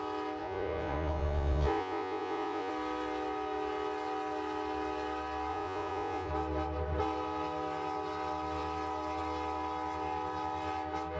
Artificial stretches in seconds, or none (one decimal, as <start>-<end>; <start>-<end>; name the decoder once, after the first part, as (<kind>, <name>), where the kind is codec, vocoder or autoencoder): 0.4-2.7 (vocoder, Vocos); 5.5-6.3